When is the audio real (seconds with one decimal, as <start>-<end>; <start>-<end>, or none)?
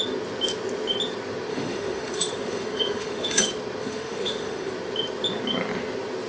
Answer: 0.0-1.5; 3.4-3.8; 4.7-6.3